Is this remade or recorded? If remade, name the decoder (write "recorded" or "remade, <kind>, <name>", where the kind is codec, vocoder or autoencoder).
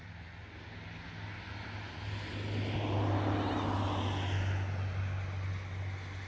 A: recorded